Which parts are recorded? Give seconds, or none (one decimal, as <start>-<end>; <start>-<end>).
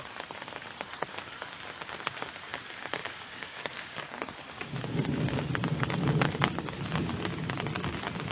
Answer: 0.0-3.0; 4.3-8.3